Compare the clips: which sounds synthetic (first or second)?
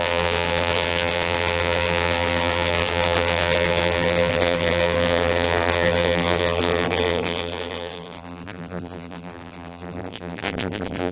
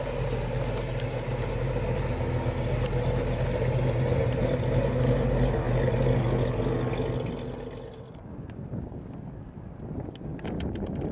first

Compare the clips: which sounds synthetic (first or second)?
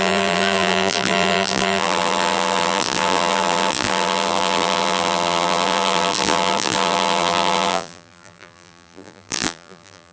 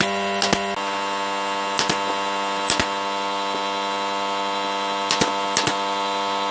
first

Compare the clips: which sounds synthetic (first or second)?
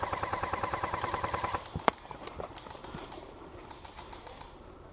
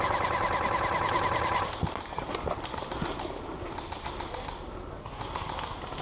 first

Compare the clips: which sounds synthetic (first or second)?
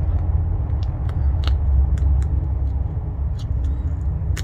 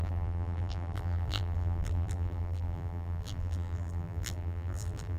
second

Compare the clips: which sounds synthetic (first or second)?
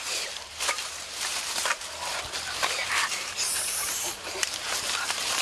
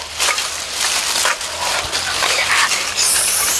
first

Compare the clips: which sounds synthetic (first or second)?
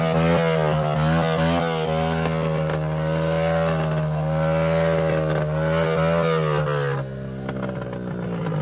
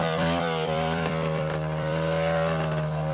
second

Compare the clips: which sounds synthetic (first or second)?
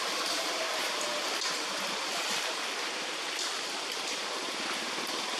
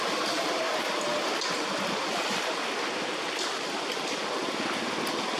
first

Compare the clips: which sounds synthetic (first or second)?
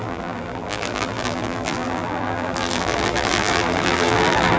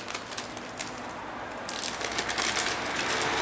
first